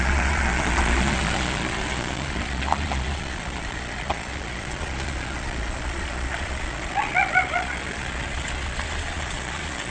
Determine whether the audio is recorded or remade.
remade